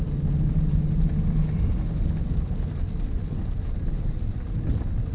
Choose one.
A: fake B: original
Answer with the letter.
B